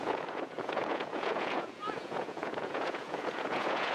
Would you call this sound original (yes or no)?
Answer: no